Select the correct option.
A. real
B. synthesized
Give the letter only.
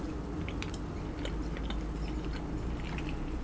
A